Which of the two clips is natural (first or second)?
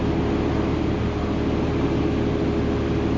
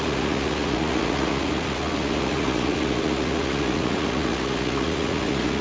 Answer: first